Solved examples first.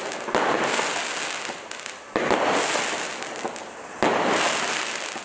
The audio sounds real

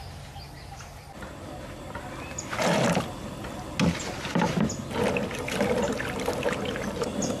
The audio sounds real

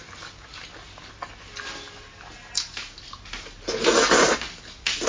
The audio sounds real